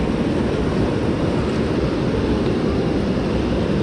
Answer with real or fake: real